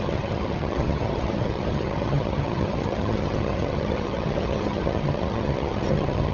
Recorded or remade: remade